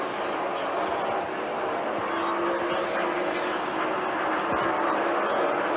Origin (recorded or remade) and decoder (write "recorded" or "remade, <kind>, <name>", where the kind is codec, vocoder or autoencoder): recorded